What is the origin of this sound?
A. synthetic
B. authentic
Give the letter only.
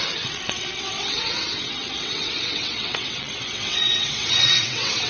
A